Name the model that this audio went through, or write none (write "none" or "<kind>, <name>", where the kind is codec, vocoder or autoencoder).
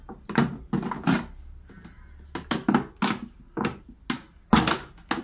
none